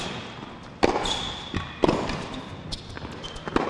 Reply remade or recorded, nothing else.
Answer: recorded